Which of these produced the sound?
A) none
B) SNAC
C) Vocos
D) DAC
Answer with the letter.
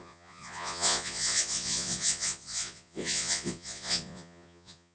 C